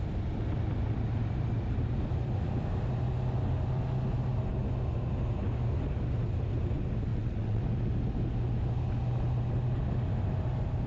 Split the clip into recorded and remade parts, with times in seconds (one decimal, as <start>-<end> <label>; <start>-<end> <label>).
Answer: 0.0-7.1 recorded; 7.1-7.6 remade; 7.6-10.9 recorded